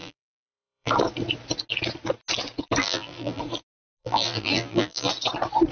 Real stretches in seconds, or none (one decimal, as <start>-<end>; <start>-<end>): 0.9-2.8; 3.4-4.0; 5.1-5.7